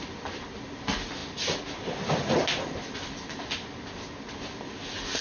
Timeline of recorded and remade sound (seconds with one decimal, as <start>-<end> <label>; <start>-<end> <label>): 0.0-5.2 recorded